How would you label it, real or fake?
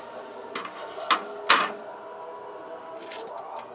real